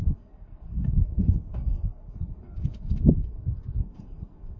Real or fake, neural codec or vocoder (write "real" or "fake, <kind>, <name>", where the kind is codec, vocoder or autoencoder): fake, codec, SNAC